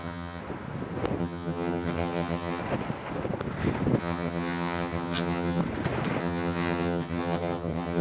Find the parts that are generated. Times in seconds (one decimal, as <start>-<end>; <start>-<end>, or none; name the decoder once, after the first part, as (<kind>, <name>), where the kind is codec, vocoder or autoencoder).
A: 0.0-0.4 (vocoder, HiFi-GAN); 1.2-2.6; 4.0-5.6; 6.2-8.0

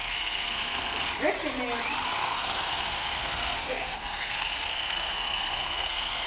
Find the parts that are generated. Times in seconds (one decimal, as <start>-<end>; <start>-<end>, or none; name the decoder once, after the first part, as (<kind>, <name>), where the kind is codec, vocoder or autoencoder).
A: 0.0-1.1 (codec, SNAC); 2.2-6.3

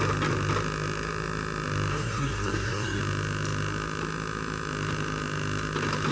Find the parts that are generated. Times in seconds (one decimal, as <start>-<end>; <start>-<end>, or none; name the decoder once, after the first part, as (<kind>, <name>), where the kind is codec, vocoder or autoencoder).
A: 1.9-3.0 (codec, SNAC)

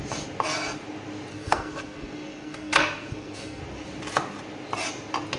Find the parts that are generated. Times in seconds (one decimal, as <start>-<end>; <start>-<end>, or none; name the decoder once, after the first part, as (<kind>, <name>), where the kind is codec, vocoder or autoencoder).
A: 1.3-3.6 (codec, SNAC)

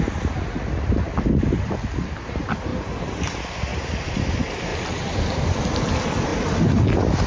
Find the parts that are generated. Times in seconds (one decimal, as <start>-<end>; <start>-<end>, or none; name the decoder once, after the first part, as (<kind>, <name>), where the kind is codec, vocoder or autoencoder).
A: 2.7-3.2 (vocoder, BigVGAN v2); 3.7-4.3; 4.7-5.4

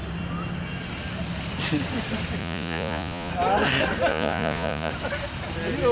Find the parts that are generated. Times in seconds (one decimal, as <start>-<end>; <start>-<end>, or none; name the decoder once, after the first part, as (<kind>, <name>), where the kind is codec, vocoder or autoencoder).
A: 2.4-3.3 (vocoder, Vocos); 4.1-4.9

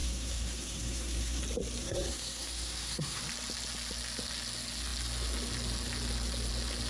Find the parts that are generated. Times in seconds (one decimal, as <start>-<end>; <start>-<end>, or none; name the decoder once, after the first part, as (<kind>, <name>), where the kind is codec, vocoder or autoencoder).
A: 0.0-1.4 (codec, SNAC); 1.8-3.2